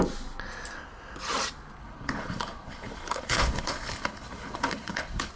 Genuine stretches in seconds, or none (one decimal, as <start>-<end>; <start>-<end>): 0.0-1.8